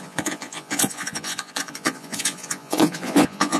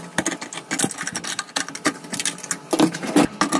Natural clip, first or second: second